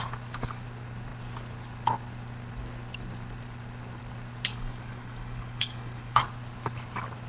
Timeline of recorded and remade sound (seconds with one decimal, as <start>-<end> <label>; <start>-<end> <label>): 0.0-4.5 recorded; 4.5-6.2 remade; 6.2-7.3 recorded